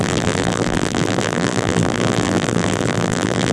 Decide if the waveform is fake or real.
fake